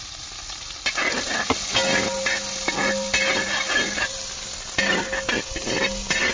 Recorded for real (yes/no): yes